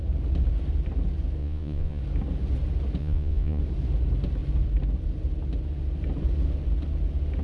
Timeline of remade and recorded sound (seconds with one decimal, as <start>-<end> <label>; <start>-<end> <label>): 0.0-1.4 recorded; 1.4-2.0 remade; 2.0-3.0 recorded; 3.0-3.6 remade; 3.6-7.4 recorded